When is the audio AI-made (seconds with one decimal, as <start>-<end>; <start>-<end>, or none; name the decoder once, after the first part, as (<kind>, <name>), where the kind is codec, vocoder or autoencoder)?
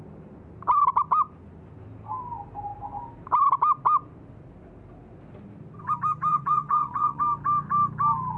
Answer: 6.3-7.2 (vocoder, WaveNeXt)